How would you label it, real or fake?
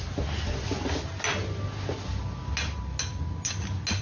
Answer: real